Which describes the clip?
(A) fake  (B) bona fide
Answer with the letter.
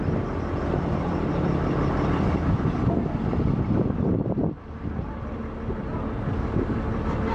B